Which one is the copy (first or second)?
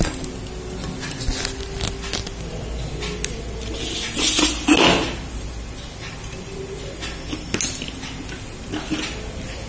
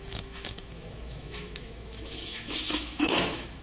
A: second